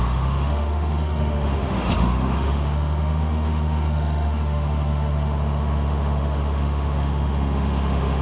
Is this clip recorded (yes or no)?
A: no